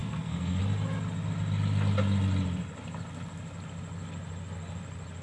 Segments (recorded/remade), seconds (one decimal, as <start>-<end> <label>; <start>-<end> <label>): 0.0-0.6 remade; 0.6-5.2 recorded